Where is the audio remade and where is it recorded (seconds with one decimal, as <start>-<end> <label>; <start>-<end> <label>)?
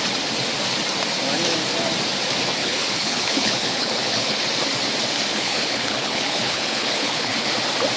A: 0.0-2.6 recorded; 2.6-4.4 remade; 4.4-5.3 recorded; 5.3-7.5 remade; 7.5-8.0 recorded